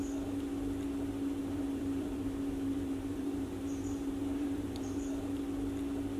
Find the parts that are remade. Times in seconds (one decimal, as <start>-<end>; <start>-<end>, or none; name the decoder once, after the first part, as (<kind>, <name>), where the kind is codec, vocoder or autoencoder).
1.4-5.1 (vocoder, BigVGAN v2)